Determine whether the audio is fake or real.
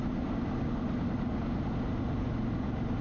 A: real